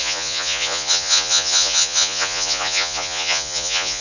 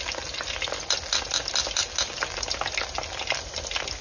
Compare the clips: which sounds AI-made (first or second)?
first